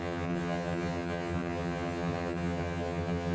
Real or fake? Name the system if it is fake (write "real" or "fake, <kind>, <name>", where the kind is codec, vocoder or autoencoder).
fake, vocoder, HiFi-GAN